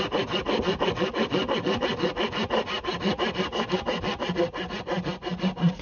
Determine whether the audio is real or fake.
real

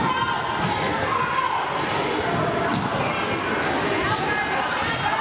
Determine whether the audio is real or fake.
real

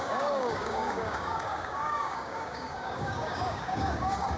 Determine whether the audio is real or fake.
fake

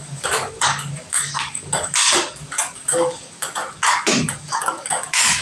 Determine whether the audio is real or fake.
fake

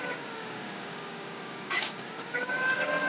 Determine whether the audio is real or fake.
fake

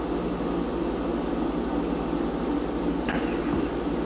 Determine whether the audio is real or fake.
real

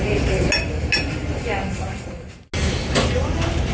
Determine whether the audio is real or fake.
real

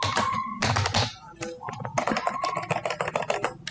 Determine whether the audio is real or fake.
real